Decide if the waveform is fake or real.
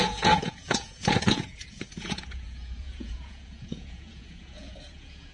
fake